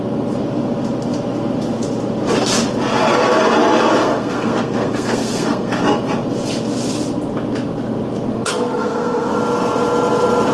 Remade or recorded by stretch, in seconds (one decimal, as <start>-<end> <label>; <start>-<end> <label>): 0.0-4.0 recorded; 4.0-5.8 remade; 5.8-8.3 recorded; 8.3-9.4 remade; 9.4-10.5 recorded